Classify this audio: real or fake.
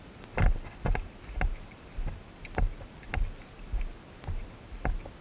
real